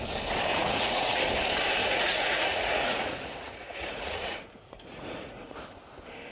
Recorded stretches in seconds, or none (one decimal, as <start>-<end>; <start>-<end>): 0.0-0.5; 1.2-1.8; 5.6-6.3